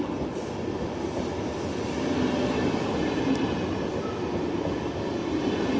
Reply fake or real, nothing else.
real